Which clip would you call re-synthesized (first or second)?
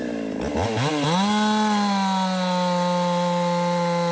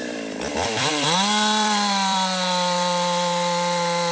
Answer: second